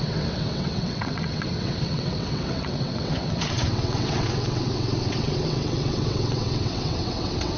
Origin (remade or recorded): remade